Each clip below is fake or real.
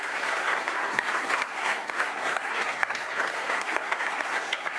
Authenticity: fake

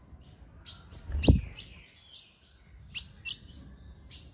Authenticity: real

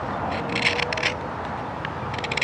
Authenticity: real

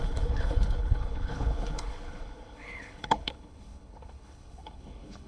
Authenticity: fake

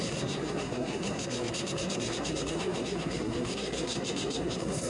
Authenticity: fake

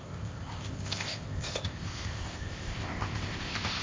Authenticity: fake